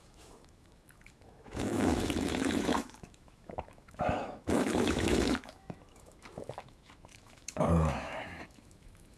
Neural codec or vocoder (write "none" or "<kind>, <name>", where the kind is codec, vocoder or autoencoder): autoencoder, DAC-VAE